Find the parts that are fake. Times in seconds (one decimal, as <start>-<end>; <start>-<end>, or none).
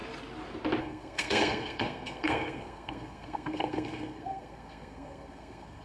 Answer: 0.8-5.8